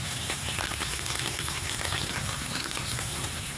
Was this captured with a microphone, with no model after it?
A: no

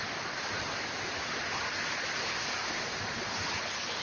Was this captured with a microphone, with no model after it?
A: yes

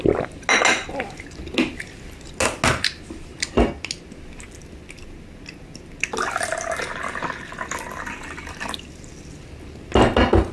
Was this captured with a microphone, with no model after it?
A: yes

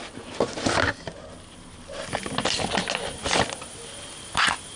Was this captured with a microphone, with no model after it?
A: yes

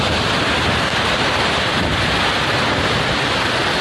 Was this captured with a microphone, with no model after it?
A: yes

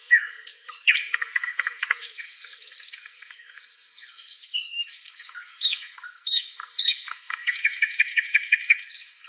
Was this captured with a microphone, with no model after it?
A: no